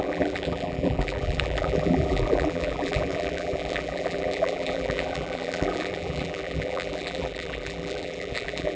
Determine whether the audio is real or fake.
fake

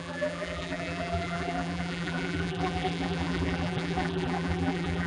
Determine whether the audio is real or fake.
fake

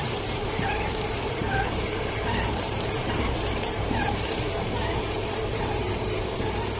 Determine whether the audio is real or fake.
fake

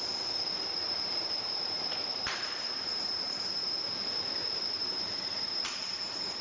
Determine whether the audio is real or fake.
fake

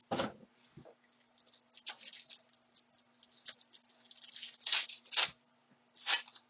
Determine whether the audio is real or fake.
real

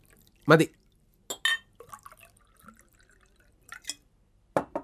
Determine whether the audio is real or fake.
real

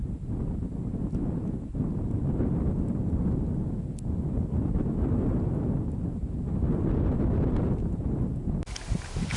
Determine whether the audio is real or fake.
real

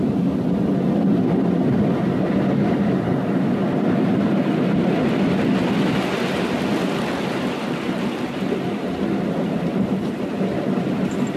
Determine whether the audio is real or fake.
real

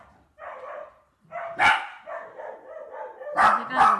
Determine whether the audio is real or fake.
real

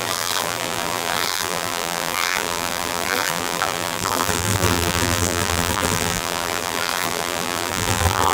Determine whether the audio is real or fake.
fake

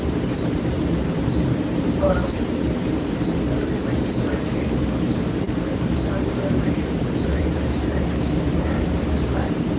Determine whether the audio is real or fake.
fake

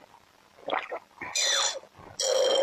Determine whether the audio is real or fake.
real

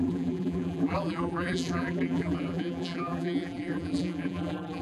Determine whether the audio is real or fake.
fake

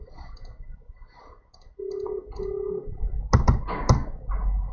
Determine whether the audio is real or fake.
real